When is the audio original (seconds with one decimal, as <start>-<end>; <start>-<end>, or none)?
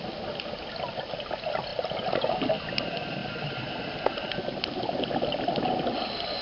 0.0-6.4